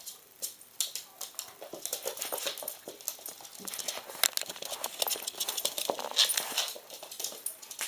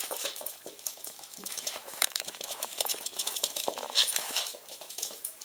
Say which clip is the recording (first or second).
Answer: first